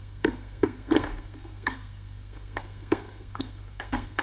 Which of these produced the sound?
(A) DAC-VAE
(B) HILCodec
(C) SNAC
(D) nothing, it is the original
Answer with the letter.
C